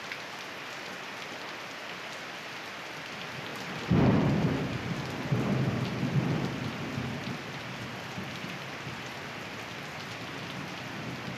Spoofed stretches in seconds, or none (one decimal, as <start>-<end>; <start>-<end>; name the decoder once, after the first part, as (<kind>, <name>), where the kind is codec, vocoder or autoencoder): none